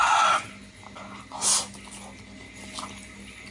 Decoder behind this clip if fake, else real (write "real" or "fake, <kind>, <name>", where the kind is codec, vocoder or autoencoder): real